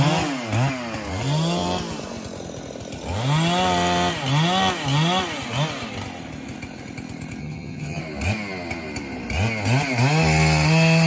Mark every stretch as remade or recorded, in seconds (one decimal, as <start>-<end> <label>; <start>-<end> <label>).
0.0-7.4 recorded; 7.4-8.0 remade; 8.0-11.1 recorded